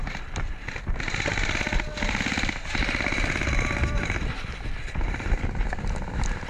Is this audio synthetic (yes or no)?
yes